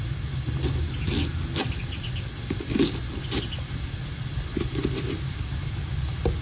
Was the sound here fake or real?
real